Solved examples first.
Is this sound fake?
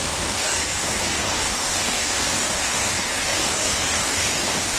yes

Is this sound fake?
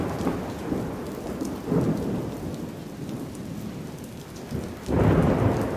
no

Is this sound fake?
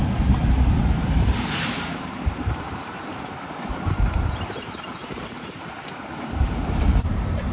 yes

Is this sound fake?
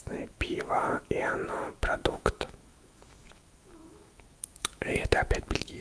yes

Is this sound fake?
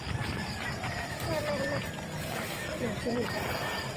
yes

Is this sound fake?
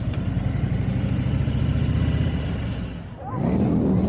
no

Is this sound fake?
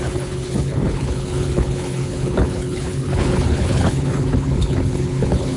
yes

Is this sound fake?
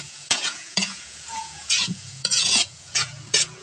yes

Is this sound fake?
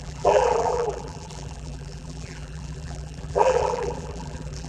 yes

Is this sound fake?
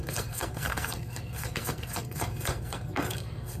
yes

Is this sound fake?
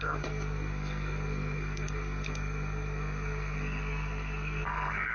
yes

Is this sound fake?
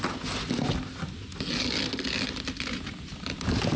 no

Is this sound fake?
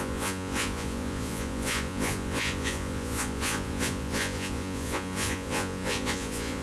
yes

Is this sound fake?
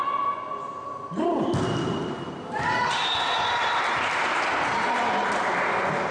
no